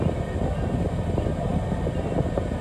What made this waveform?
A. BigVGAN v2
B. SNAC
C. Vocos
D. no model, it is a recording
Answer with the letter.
D